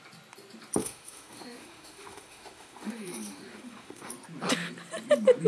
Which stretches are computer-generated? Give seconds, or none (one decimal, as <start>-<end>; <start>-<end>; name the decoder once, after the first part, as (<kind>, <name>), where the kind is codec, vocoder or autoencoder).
0.8-4.1 (autoencoder, DAC-VAE)